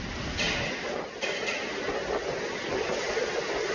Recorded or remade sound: recorded